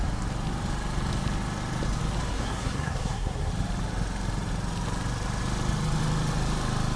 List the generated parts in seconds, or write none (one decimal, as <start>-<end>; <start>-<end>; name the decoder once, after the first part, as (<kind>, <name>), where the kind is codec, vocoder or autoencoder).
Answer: 2.3-3.5 (codec, SNAC)

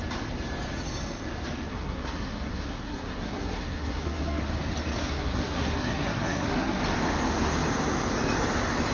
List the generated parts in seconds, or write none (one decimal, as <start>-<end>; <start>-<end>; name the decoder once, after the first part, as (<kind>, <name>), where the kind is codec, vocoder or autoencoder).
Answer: 1.7-4.4 (codec, SNAC); 5.0-6.8